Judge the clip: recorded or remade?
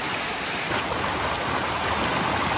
recorded